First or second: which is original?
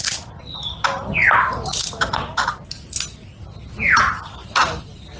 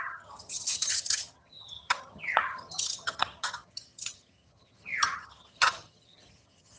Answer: first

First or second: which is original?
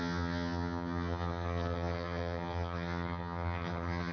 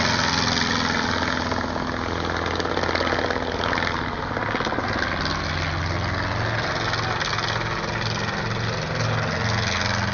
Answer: second